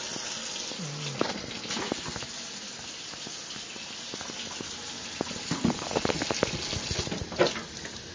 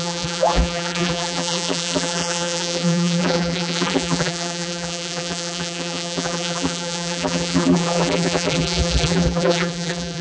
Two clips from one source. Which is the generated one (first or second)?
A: second